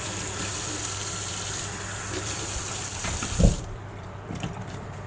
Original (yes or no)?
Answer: no